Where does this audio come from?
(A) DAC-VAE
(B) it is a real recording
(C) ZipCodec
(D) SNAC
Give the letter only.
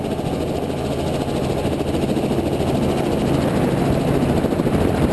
B